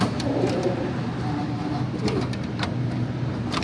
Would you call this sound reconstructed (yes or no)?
yes